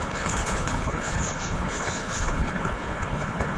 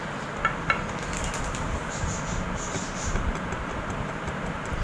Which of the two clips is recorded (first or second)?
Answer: second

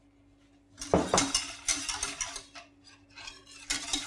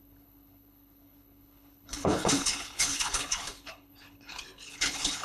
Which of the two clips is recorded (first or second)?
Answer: first